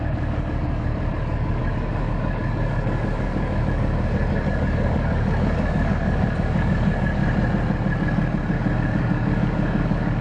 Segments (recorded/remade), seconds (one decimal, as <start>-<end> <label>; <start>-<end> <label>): 0.0-7.2 remade; 7.2-8.8 recorded; 8.8-10.2 remade